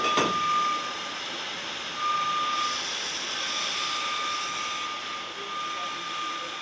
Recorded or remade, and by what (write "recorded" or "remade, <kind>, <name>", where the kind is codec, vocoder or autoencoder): recorded